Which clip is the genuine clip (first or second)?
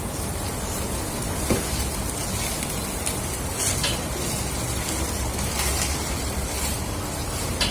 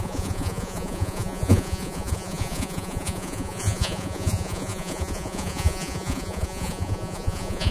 first